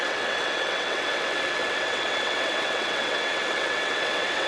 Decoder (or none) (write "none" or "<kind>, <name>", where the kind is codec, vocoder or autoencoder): vocoder, WaveNeXt